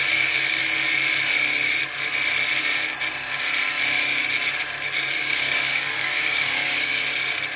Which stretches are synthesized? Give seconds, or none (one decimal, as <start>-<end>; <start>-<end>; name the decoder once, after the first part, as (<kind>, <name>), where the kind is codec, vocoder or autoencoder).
0.0-0.6 (codec, DAC); 5.2-6.9